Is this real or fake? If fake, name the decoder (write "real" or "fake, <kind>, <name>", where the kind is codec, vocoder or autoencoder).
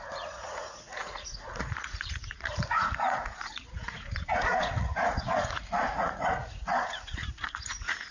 fake, vocoder, Vocos